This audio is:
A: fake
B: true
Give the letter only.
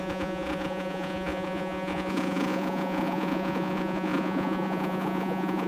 A